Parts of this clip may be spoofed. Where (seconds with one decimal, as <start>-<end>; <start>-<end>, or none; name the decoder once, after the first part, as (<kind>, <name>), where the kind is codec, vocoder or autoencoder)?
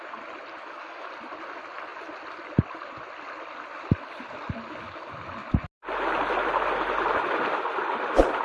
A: 0.6-1.1 (autoencoder, DAC-VAE)